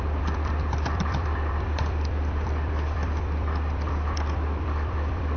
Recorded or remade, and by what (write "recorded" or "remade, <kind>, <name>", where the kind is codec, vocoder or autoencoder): remade, vocoder, BigVGAN v2